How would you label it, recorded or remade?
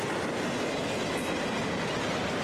recorded